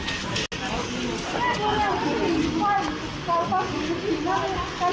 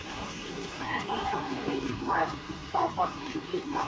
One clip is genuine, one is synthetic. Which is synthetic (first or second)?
second